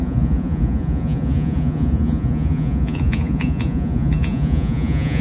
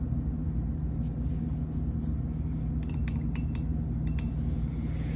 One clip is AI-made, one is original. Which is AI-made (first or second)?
first